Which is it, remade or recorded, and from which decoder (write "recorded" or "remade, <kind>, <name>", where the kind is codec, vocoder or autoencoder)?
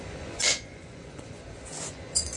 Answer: remade, vocoder, Vocos